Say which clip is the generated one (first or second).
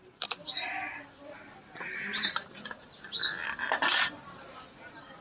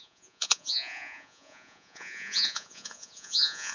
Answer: second